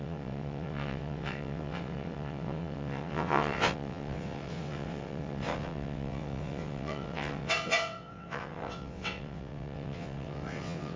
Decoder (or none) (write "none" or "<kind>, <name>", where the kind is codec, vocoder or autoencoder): vocoder, WaveNeXt